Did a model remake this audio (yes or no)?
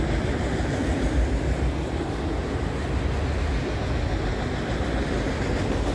no